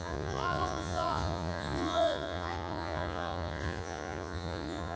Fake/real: fake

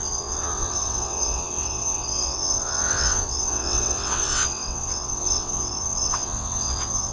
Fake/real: fake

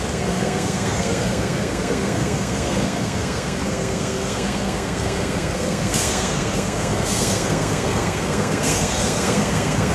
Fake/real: fake